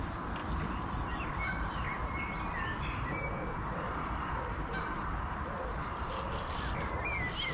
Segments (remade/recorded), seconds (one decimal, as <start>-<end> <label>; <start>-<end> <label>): 0.0-7.5 recorded